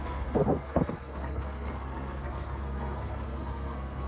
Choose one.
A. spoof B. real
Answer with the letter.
A